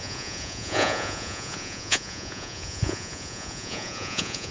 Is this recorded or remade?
remade